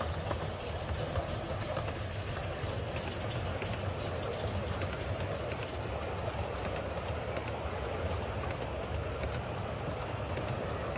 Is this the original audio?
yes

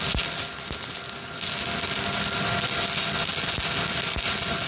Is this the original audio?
yes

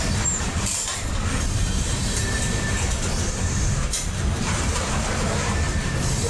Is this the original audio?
no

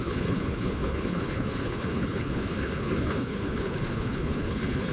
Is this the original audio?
no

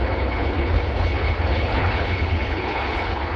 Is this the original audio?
no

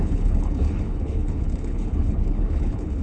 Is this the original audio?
no